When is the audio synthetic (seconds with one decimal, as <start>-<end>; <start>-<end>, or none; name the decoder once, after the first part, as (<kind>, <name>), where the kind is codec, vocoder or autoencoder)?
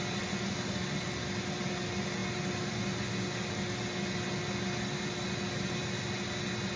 none